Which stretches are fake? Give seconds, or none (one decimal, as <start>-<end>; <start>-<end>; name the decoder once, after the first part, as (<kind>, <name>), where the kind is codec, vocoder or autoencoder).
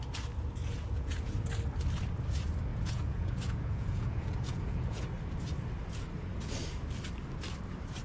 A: 0.6-1.5 (vocoder, Vocos); 2.7-5.0